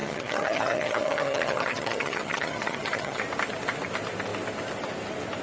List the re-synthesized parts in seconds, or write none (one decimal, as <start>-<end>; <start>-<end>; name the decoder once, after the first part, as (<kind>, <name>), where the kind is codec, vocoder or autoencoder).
0.0-3.2 (vocoder, HiFi-GAN)